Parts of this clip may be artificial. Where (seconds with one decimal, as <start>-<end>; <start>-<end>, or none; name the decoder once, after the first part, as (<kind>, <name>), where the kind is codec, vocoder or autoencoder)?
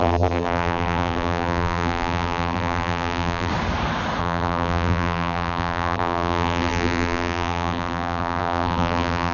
0.0-3.5 (vocoder, BigVGAN v2); 4.2-9.3